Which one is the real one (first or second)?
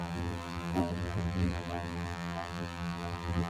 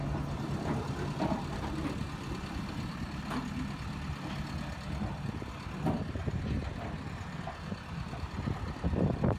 second